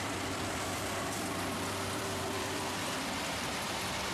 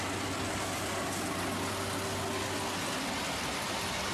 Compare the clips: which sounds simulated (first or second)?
first